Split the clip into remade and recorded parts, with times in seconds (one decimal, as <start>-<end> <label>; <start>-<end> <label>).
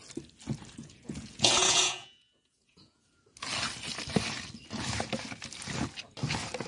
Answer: 0.0-0.8 recorded; 0.8-3.1 remade; 3.1-6.7 recorded